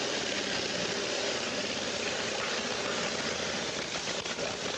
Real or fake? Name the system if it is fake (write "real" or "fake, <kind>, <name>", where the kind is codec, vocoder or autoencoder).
real